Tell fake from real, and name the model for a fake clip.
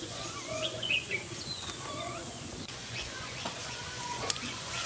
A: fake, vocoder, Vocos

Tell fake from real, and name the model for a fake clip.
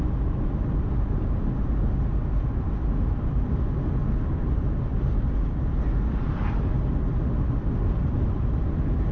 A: real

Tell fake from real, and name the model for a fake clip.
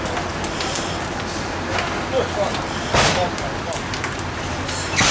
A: real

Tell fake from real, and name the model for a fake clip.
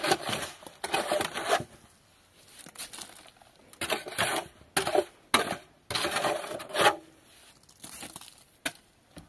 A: real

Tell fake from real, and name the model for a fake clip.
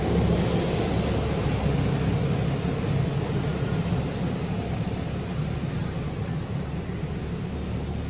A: real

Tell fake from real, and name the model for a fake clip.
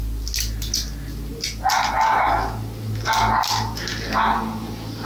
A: real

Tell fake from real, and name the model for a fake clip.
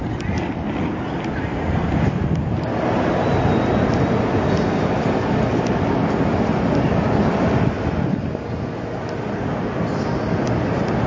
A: real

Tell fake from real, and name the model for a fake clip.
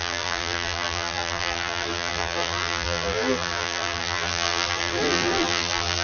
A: fake, vocoder, BigVGAN v2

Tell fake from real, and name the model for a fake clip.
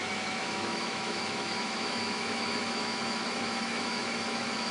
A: fake, autoencoder, DAC-VAE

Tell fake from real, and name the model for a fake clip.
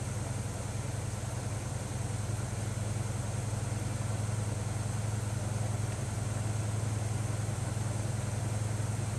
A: real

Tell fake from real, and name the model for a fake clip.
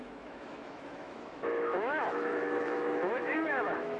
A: fake, autoencoder, DAC-VAE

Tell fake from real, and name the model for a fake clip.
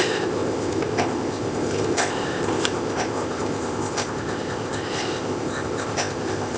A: fake, codec, ZipCodec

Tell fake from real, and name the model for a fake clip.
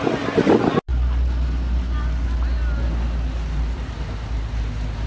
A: real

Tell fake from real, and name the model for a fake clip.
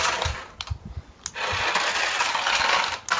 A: real